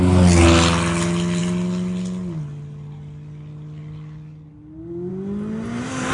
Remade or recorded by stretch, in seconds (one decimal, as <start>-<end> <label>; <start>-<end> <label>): 0.0-6.1 recorded